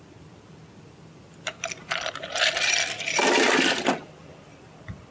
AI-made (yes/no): no